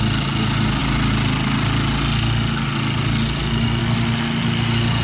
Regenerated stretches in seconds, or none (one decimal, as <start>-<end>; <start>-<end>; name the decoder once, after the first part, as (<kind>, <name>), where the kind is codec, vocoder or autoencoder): none